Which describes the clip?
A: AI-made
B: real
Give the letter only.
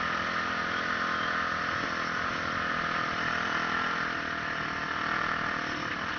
B